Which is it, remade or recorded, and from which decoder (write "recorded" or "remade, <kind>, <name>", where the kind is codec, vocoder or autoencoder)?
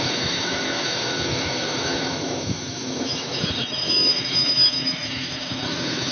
remade, autoencoder, DAC-VAE